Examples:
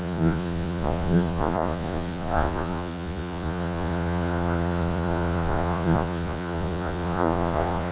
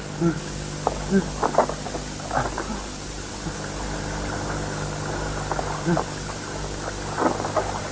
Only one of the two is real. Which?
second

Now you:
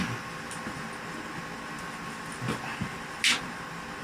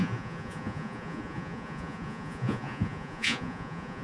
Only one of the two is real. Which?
first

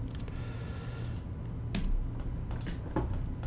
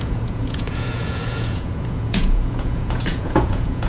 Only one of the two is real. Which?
first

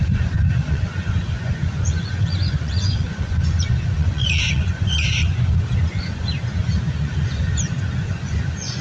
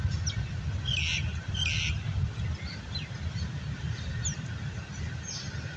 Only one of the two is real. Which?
second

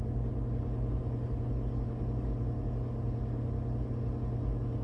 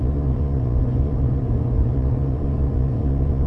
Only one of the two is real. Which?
first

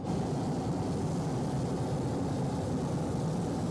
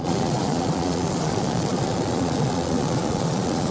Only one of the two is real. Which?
first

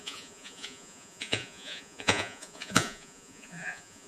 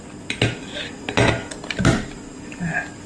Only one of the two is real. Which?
second